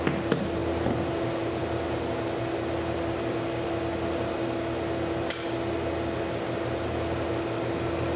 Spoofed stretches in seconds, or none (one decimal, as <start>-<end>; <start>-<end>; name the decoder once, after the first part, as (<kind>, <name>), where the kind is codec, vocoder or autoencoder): none